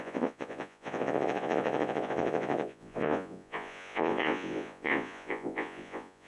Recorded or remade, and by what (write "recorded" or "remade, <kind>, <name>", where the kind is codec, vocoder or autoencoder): remade, vocoder, Vocos